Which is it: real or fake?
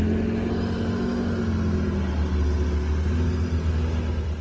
real